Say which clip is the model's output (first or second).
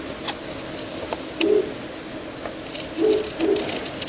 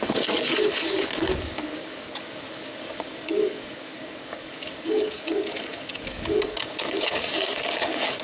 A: second